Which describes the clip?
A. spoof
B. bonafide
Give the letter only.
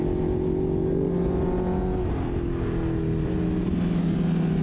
B